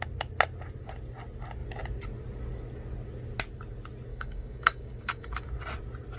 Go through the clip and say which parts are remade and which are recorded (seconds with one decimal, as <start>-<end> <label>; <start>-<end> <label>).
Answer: 0.0-4.1 recorded; 4.1-5.3 remade; 5.3-6.2 recorded